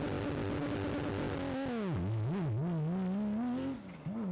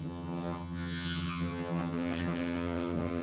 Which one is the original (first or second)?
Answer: first